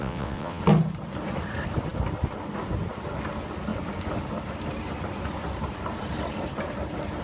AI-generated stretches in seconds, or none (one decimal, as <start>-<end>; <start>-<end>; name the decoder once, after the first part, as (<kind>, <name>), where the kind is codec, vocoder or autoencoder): 0.0-0.6 (vocoder, WaveNeXt)